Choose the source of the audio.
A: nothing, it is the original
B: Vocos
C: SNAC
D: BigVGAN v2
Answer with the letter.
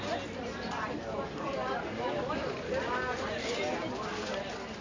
A